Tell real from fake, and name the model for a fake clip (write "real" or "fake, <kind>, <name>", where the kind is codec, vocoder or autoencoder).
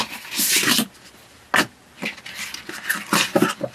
real